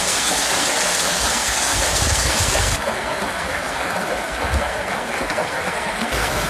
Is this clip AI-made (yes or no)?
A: yes